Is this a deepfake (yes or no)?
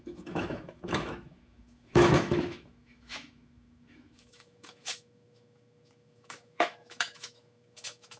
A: yes